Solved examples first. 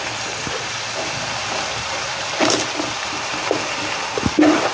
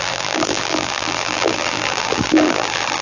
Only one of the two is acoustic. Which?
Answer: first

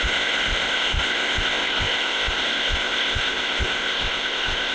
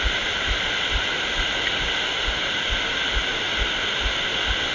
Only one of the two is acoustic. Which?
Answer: second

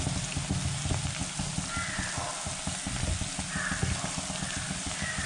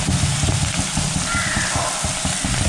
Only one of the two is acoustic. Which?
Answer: first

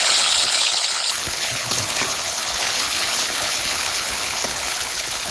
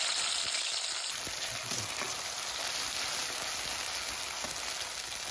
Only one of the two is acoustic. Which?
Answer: second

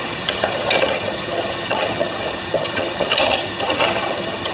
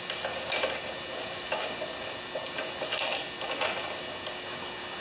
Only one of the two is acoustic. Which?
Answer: second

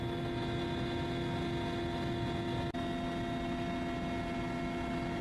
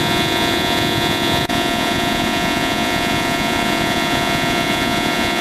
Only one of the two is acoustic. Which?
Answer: first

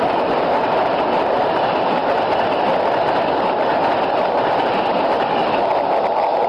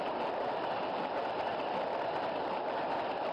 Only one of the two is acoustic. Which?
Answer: first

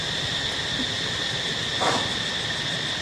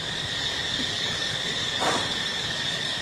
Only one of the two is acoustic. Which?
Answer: first